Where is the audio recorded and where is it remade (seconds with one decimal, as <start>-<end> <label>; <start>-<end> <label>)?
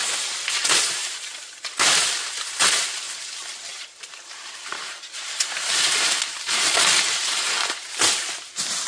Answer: 0.0-1.0 recorded; 1.0-1.7 remade; 1.7-3.7 recorded; 3.7-8.0 remade; 8.0-8.9 recorded